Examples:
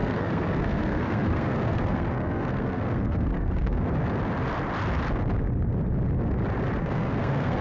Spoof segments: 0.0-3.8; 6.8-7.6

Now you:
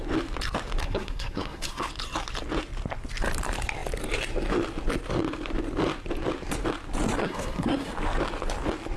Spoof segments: 0.8-1.9; 7.2-7.9